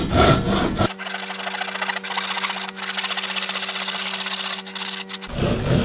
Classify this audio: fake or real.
real